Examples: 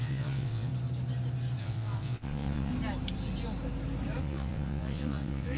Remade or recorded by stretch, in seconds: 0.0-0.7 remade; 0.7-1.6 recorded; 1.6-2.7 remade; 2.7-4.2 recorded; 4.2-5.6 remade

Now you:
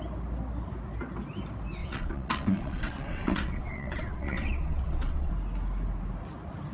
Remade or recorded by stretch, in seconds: 0.0-1.8 recorded; 1.8-5.3 remade; 5.3-6.7 recorded